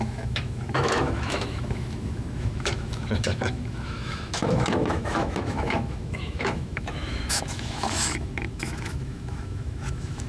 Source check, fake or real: fake